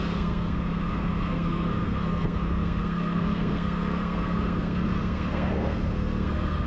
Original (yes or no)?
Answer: no